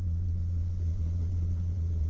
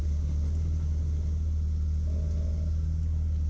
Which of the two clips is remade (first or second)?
first